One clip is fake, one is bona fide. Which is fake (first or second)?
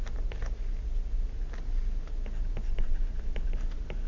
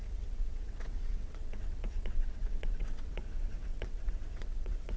second